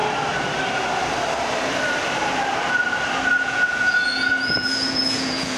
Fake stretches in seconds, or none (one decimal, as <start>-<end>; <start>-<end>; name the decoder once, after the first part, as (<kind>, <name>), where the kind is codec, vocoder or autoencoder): 3.4-5.6 (vocoder, Vocos)